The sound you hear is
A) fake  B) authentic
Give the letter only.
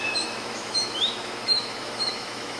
A